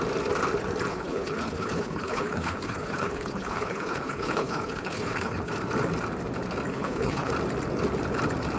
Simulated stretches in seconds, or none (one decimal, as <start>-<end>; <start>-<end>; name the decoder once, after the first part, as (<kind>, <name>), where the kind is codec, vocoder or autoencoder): 0.9-5.5 (codec, HILCodec); 6.7-7.3